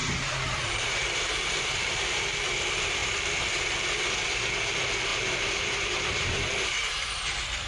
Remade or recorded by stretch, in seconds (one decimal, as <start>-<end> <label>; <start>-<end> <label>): 0.0-2.0 remade; 2.0-5.1 recorded; 5.1-7.2 remade; 7.2-7.7 recorded